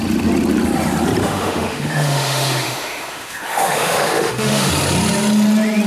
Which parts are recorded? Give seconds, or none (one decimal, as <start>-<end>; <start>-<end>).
0.0-1.2; 4.7-5.9